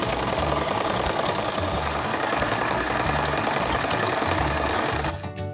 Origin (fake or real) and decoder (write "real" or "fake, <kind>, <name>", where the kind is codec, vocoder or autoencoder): fake, codec, DAC